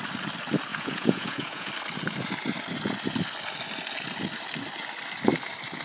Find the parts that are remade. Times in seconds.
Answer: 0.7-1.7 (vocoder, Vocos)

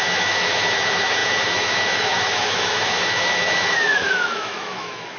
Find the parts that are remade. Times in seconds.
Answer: 0.0-5.2 (autoencoder, DAC-VAE)

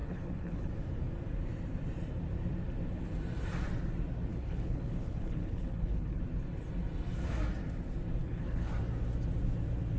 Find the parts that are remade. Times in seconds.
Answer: 0.0-0.7 (codec, HILCodec); 4.3-6.2; 8.2-8.7

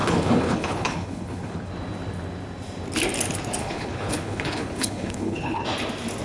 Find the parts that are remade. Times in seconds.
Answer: 0.0-1.7 (codec, HILCodec); 3.6-5.6

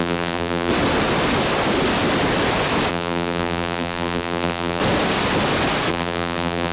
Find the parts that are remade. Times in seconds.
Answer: 0.0-0.7 (vocoder, BigVGAN v2); 2.9-4.8; 5.9-6.7

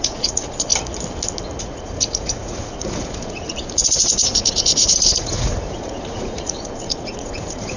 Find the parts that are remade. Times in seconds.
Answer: 0.0-0.7 (vocoder, Vocos); 1.6-7.8